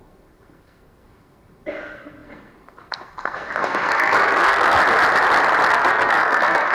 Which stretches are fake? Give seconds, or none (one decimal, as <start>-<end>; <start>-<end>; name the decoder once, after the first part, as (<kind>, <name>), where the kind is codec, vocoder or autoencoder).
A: 0.0-4.8 (codec, SNAC); 5.7-6.7